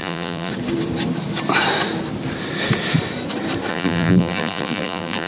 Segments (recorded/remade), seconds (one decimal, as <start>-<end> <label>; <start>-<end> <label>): 0.0-0.5 remade; 0.5-3.7 recorded; 3.7-5.3 remade